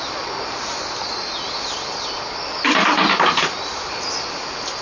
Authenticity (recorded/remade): remade